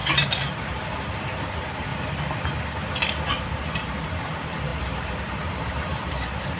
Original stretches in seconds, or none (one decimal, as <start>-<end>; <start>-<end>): 1.9-3.3